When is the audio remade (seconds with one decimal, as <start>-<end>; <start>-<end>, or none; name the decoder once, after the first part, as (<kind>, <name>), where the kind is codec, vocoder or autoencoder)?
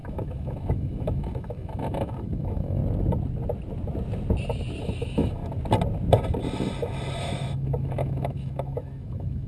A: 0.0-2.8 (autoencoder, DAC-VAE); 4.8-5.4; 7.2-9.5